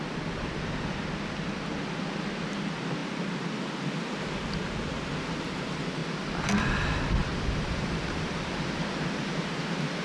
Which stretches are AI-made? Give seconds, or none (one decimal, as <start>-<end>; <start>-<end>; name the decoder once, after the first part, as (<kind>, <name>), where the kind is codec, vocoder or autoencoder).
6.0-6.8 (vocoder, BigVGAN v2); 7.2-9.5